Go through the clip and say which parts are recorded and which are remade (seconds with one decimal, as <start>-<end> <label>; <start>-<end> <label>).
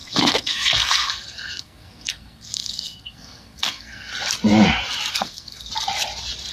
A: 0.0-4.1 remade; 4.1-5.1 recorded; 5.1-5.7 remade; 5.7-6.5 recorded